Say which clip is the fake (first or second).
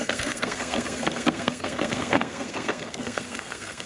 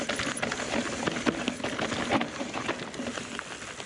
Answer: first